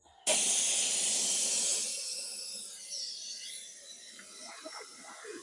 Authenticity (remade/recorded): recorded